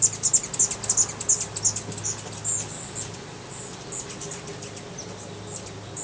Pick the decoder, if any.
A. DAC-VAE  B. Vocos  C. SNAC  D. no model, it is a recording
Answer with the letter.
D